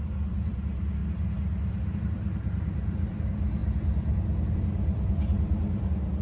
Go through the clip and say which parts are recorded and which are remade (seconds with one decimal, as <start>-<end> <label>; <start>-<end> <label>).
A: 0.0-1.0 remade; 1.0-2.0 recorded; 2.0-3.6 remade; 3.6-4.5 recorded; 4.5-6.2 remade